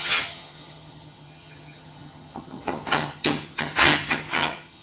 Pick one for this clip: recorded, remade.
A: remade